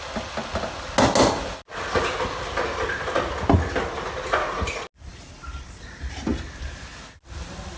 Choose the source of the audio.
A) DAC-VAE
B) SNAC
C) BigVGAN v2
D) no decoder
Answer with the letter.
D